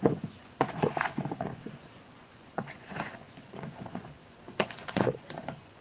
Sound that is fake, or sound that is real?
fake